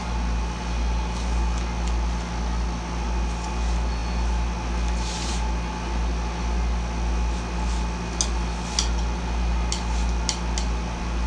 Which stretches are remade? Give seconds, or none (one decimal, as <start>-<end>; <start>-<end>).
none